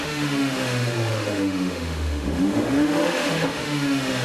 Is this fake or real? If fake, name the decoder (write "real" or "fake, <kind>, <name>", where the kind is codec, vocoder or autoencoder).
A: fake, autoencoder, DAC-VAE